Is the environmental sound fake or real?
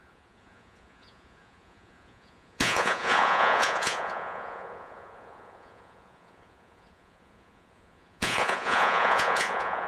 fake